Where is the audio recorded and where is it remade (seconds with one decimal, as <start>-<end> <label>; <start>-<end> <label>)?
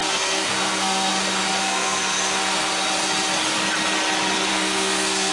0.0-1.1 remade; 1.1-1.6 recorded; 1.6-2.7 remade; 2.7-4.5 recorded; 4.5-5.3 remade